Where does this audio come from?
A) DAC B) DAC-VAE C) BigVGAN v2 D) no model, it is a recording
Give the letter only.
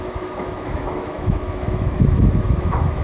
B